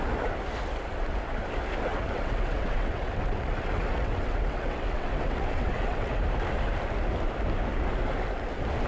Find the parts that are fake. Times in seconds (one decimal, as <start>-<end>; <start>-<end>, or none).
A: 1.9-6.2